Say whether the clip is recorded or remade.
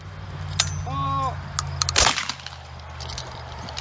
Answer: recorded